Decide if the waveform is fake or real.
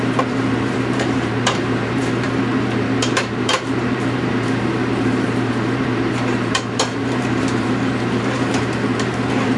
fake